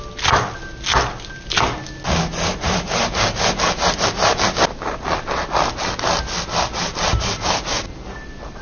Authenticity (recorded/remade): recorded